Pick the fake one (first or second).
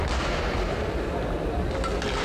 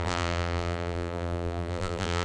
second